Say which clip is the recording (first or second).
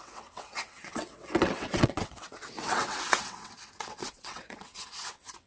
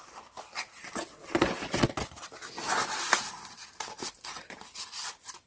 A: second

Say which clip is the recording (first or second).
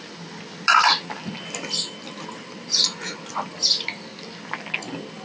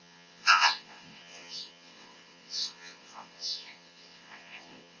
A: first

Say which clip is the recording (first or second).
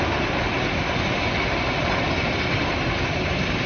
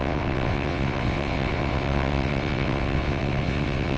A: first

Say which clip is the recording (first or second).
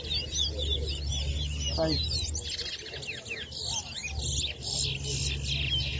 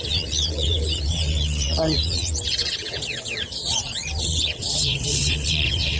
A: first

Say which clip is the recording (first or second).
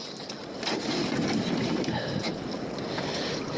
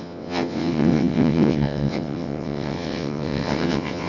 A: first